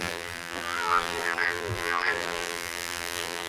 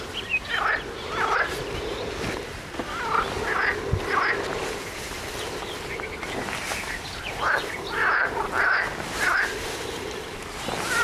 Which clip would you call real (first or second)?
second